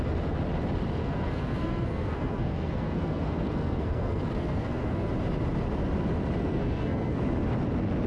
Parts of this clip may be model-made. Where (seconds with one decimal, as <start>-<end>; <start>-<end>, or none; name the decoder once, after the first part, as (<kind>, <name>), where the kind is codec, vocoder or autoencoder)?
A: 1.0-5.1 (codec, SNAC); 6.4-7.2